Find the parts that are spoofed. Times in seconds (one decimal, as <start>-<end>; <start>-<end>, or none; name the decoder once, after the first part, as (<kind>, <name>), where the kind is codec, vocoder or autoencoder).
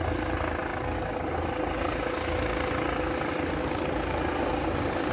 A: none